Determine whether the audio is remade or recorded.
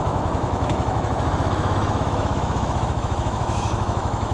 remade